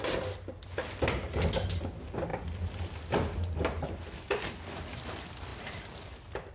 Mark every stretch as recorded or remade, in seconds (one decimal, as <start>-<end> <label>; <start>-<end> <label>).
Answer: 0.0-2.3 recorded; 2.3-4.4 remade; 4.4-6.5 recorded